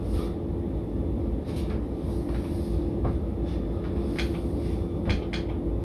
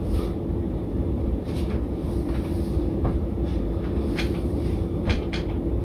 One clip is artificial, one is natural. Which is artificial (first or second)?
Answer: second